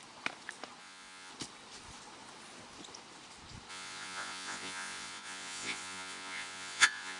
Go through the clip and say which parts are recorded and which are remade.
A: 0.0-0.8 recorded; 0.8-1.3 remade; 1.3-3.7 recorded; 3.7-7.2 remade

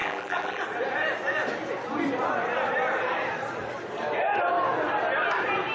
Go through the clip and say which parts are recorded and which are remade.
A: 0.0-0.6 remade; 0.6-5.7 recorded

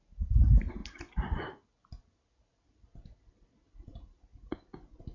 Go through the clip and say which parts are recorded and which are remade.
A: 0.0-5.1 recorded

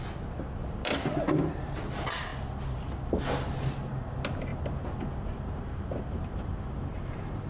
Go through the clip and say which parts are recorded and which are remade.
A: 0.0-0.6 recorded; 0.6-1.4 remade; 1.4-4.5 recorded; 4.5-7.5 remade

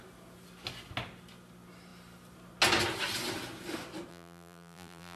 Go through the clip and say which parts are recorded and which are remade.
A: 0.0-4.1 recorded; 4.1-5.2 remade